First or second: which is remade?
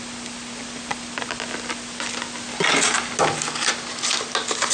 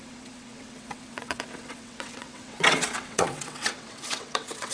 second